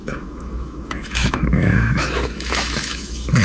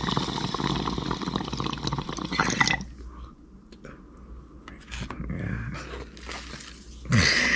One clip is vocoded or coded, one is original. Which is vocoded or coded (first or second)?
first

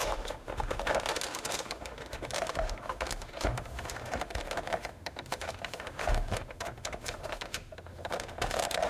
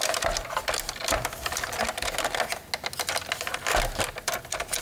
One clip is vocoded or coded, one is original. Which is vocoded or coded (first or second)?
first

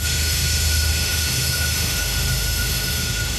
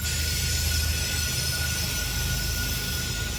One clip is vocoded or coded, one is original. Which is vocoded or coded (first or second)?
first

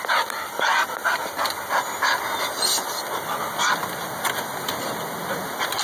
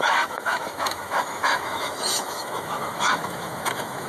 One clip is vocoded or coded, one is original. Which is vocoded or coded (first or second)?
second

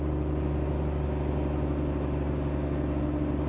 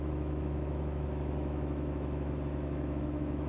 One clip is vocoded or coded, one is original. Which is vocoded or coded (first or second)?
second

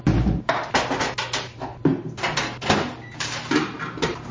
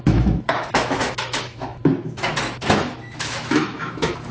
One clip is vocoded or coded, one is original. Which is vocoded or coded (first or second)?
second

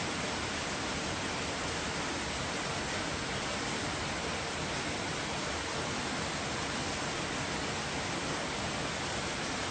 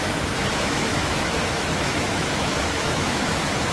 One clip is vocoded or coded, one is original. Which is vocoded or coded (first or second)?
second